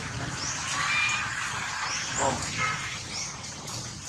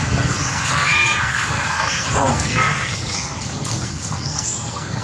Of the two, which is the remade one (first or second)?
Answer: second